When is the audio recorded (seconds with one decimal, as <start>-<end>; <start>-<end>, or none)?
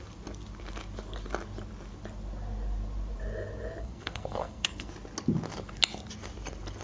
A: 0.0-3.8; 4.9-6.8